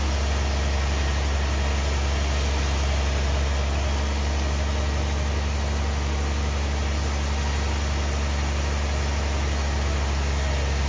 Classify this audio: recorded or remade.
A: recorded